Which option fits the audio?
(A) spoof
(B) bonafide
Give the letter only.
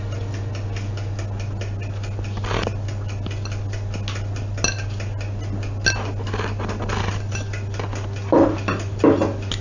B